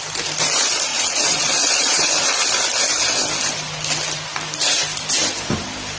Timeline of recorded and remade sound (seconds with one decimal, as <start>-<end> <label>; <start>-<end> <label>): 0.0-0.9 recorded; 0.9-2.1 remade; 2.1-6.0 recorded